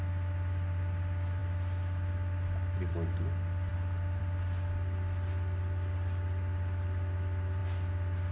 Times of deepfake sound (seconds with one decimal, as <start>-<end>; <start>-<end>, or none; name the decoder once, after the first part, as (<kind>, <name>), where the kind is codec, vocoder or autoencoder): none